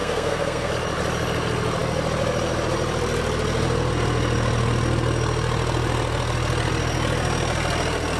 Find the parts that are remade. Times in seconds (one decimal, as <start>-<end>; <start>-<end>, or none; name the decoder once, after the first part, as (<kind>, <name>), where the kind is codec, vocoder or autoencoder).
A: 0.0-0.7 (codec, SNAC)